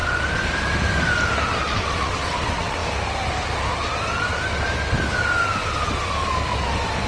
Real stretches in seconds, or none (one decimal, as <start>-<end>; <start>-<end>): 0.0-1.4; 2.8-7.1